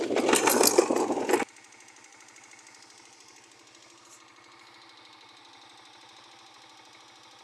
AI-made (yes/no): no